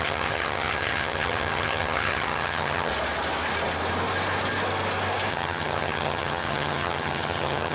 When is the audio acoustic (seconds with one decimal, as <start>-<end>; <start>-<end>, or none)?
2.9-5.3